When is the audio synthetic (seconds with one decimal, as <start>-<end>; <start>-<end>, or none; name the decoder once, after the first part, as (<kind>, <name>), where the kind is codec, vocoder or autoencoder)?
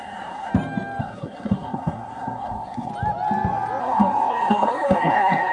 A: 0.0-0.5 (codec, SNAC); 1.0-2.9; 3.8-5.5